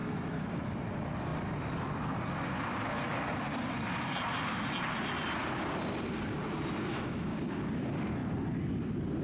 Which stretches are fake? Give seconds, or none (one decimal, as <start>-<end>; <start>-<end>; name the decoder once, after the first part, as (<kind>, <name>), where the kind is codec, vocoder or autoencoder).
0.0-0.7 (autoencoder, DAC-VAE); 6.9-7.4

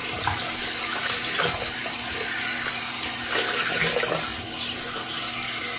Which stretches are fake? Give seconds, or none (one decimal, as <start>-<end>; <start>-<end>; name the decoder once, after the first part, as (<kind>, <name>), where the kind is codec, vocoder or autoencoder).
0.0-3.5 (vocoder, BigVGAN v2); 4.3-5.2